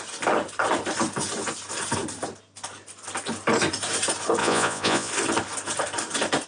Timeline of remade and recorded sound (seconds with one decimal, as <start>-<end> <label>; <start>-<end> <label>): 0.0-4.4 recorded; 4.4-5.1 remade; 5.1-6.5 recorded